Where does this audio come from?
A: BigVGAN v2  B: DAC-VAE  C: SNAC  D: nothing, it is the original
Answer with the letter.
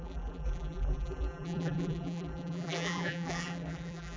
A